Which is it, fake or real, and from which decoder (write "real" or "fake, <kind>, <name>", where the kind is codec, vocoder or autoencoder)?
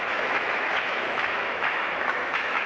fake, autoencoder, DAC-VAE